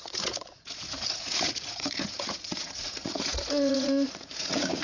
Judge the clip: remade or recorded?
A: remade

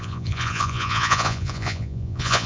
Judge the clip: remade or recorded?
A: remade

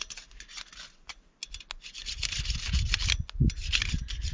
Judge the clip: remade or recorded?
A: recorded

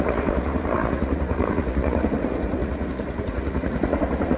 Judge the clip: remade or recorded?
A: remade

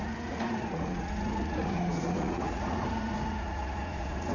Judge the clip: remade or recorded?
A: remade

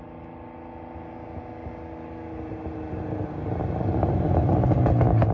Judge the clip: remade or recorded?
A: recorded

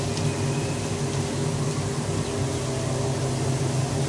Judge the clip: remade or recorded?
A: recorded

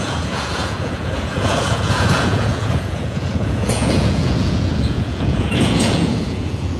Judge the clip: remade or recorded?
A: remade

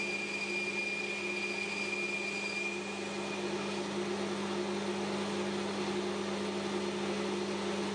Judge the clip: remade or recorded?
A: recorded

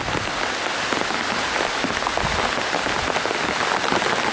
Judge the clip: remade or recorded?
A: recorded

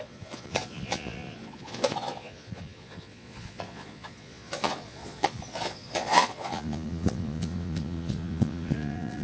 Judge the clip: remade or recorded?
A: remade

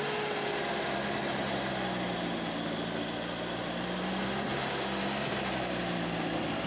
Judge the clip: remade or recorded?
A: recorded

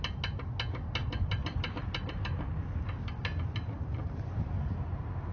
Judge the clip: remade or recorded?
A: recorded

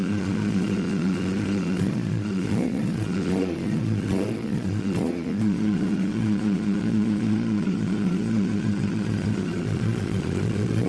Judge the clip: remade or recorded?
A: remade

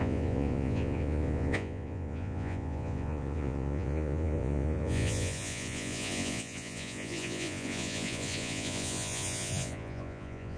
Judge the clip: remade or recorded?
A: remade